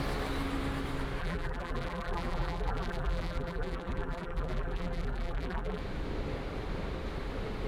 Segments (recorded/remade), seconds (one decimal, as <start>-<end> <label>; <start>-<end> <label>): 0.0-1.2 recorded; 1.2-5.8 remade; 5.8-7.7 recorded